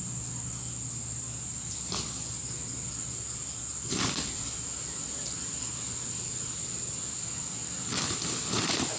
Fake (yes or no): no